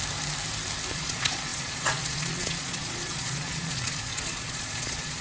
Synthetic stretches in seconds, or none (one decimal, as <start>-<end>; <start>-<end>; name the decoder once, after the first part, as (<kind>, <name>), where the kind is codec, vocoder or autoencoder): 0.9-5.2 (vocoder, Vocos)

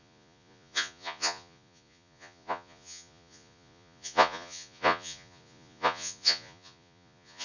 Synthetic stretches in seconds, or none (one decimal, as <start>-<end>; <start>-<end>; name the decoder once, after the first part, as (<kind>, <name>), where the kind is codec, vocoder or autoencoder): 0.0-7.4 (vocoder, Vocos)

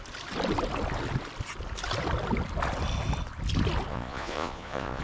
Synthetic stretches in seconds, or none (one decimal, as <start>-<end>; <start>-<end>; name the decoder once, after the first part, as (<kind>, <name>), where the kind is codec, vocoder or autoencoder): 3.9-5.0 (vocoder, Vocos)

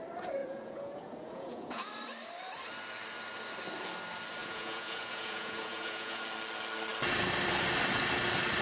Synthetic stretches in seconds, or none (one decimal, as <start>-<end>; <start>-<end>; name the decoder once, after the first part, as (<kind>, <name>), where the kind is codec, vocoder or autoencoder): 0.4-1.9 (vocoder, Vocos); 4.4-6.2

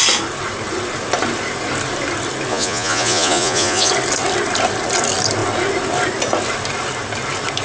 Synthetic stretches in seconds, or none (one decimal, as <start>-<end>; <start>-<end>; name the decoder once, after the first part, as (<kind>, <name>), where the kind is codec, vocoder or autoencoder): 2.5-3.9 (vocoder, Vocos)